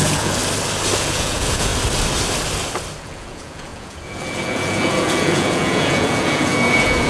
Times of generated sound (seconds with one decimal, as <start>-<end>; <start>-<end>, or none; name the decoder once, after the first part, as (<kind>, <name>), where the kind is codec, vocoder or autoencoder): 0.0-0.4 (vocoder, Vocos); 1.0-1.7; 3.0-7.1